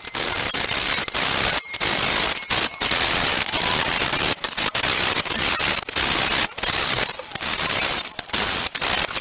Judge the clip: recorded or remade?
recorded